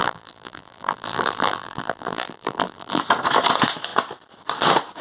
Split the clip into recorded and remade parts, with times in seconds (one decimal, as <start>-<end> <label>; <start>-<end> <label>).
0.0-3.0 remade; 3.0-5.0 recorded